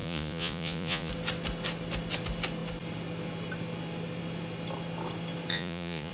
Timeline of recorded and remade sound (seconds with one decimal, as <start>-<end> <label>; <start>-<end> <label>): 0.0-1.1 remade; 1.1-5.5 recorded; 5.5-6.1 remade